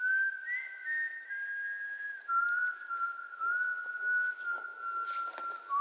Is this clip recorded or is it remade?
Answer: recorded